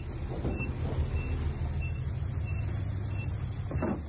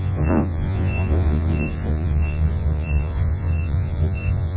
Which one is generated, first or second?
second